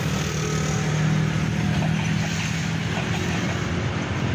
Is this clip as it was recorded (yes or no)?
yes